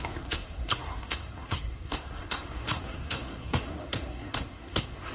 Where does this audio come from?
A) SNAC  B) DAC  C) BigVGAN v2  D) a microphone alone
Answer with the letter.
A